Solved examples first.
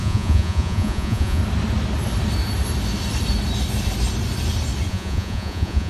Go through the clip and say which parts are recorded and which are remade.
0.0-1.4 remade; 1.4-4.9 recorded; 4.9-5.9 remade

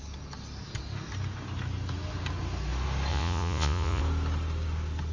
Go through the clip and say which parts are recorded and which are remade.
0.0-3.1 recorded; 3.1-4.0 remade; 4.0-5.1 recorded